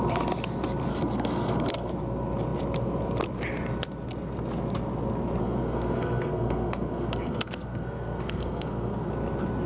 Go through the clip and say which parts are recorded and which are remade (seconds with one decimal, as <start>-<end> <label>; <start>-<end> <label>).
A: 0.0-0.9 recorded; 0.9-1.9 remade; 1.9-5.4 recorded; 5.4-9.1 remade; 9.1-9.7 recorded